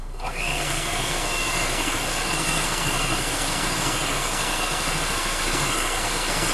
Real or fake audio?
fake